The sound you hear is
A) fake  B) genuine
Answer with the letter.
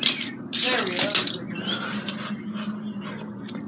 B